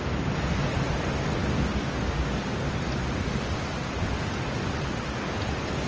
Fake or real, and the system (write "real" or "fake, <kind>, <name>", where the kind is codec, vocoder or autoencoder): real